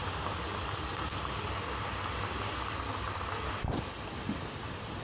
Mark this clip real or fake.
real